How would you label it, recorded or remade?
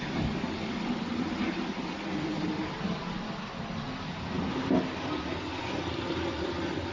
recorded